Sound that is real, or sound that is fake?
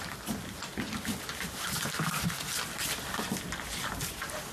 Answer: real